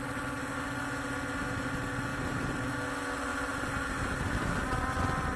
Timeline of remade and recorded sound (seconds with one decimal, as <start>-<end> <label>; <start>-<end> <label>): 0.0-2.1 recorded; 2.1-2.7 remade; 2.7-3.3 recorded; 3.3-4.2 remade; 4.2-5.4 recorded